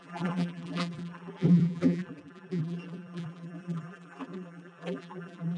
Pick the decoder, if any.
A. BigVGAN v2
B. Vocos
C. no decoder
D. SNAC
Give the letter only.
A